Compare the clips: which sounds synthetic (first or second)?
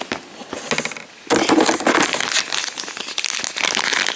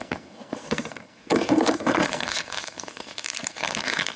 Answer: second